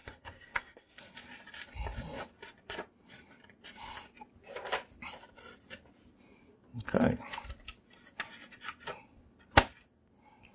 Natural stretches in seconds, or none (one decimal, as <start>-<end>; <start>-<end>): 1.0-10.5